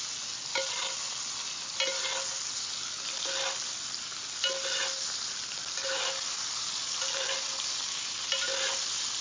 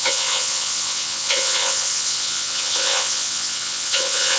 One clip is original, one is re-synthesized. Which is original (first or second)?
first